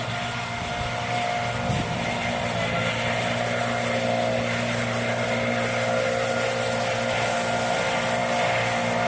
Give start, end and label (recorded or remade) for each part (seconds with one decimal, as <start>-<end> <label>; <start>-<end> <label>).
0.0-9.1 recorded